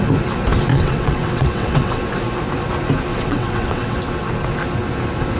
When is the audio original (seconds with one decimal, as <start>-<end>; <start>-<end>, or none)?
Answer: 0.0-0.7; 2.0-3.1; 4.0-5.4